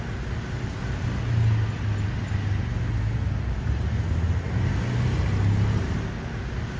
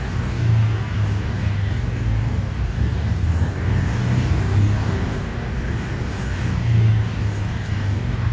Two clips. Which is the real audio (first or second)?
first